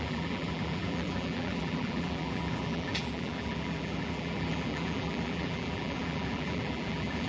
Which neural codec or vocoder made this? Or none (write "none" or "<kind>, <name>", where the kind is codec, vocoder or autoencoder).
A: vocoder, BigVGAN v2